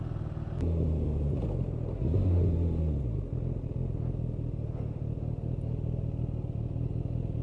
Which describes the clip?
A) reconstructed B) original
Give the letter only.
B